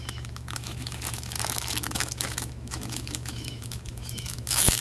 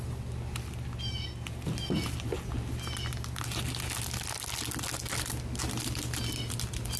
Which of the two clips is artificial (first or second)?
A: first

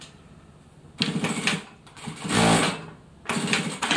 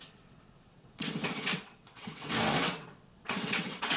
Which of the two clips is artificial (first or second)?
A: second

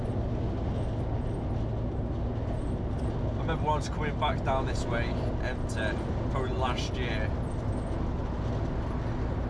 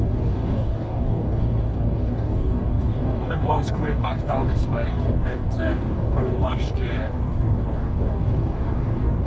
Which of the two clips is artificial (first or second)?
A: second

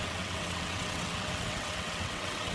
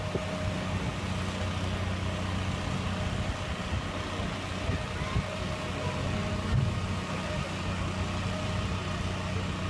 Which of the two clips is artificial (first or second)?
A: first